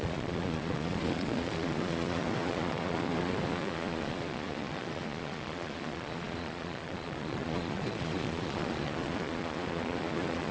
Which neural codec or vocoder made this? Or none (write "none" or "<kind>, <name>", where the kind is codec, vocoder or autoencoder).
vocoder, Vocos